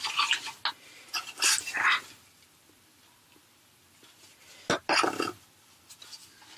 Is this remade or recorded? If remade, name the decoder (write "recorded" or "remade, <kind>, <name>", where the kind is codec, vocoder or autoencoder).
recorded